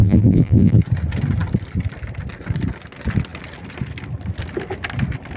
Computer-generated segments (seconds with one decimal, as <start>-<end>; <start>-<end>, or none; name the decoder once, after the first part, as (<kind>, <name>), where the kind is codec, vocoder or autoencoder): 0.0-0.8 (vocoder, BigVGAN v2)